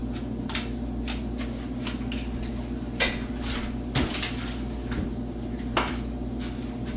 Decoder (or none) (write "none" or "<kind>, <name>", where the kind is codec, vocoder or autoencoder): none